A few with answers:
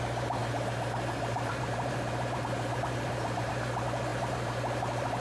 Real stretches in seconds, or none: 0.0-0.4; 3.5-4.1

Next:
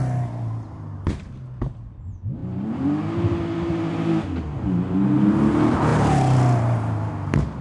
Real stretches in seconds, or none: 0.0-7.6

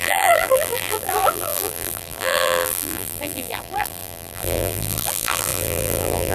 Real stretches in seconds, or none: none

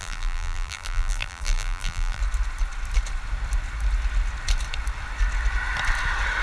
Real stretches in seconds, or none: 2.2-6.4

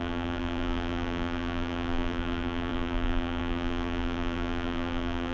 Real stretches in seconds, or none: none

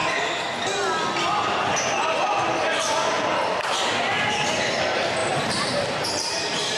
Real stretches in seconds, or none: 0.0-5.2